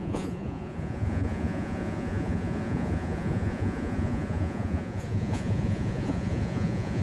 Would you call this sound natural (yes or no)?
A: no